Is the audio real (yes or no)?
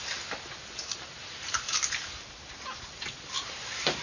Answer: yes